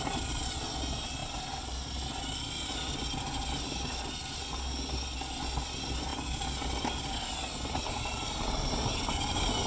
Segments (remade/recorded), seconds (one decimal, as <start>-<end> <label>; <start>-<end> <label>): 0.0-9.7 recorded